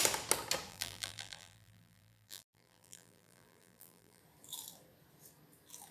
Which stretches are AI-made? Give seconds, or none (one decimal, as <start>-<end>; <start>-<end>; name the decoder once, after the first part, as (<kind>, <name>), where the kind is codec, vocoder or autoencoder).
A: 0.7-4.2 (vocoder, BigVGAN v2)